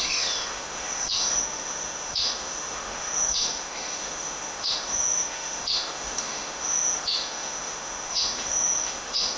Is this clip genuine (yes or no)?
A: no